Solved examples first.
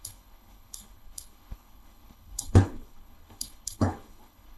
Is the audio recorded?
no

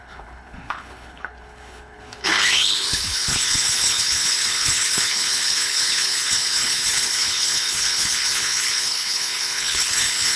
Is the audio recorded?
no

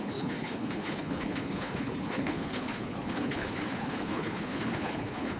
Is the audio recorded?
no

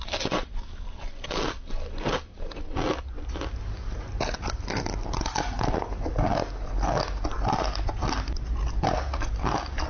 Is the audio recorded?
yes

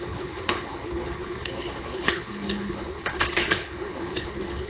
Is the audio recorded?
no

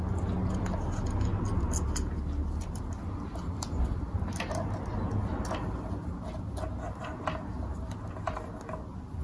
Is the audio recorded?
yes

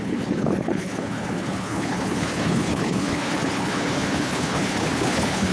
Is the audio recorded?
no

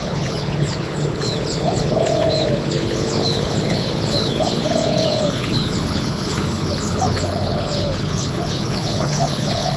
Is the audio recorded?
no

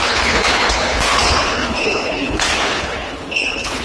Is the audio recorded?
no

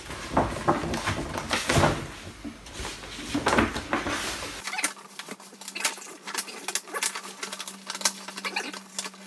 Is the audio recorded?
yes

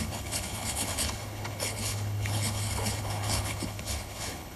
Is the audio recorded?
no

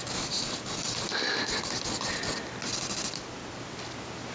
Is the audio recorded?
yes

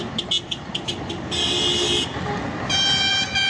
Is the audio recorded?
yes